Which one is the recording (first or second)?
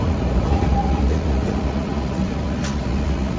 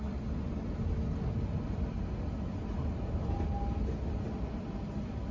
second